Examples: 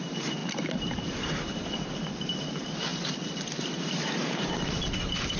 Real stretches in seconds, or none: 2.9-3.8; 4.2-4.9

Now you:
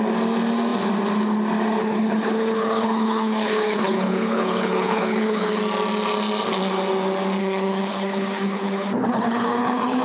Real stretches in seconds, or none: 0.0-1.8; 5.6-7.4

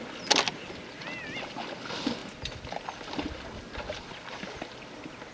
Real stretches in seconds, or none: 0.0-5.3

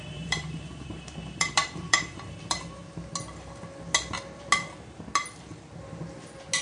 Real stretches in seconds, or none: 2.8-6.6